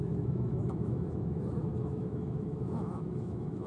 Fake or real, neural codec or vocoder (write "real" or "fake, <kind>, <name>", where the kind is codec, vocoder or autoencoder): fake, autoencoder, DAC-VAE